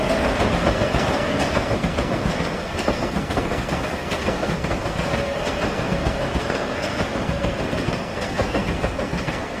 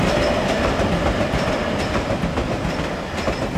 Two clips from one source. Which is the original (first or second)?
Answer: second